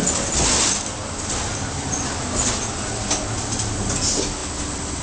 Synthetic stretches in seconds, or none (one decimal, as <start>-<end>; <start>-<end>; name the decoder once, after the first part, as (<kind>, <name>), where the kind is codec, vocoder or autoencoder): none